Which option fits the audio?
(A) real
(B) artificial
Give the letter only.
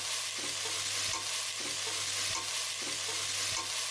A